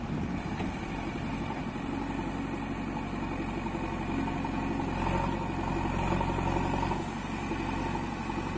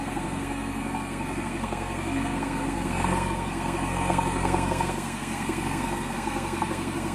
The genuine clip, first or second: first